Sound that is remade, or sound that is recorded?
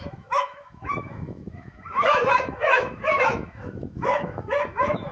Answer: remade